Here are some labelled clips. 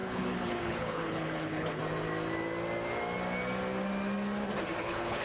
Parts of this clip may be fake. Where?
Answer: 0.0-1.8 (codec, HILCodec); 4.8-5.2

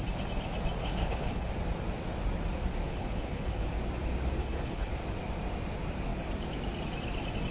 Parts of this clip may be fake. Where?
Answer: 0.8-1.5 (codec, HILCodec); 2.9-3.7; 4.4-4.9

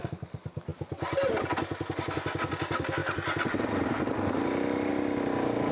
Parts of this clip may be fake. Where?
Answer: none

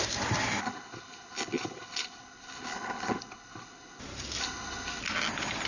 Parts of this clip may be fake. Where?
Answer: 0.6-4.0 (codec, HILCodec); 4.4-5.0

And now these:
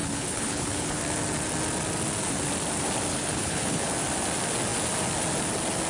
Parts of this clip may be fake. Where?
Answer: 0.0-1.0 (codec, HILCodec); 3.1-3.9